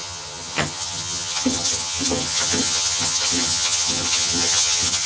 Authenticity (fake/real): fake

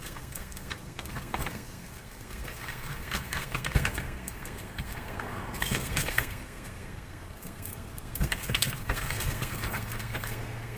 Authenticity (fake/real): fake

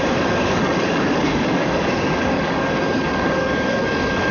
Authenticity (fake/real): fake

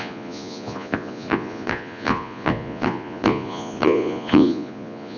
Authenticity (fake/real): fake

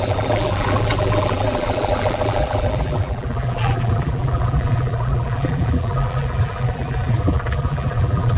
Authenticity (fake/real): fake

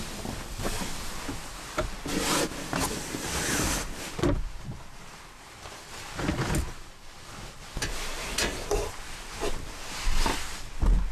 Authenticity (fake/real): real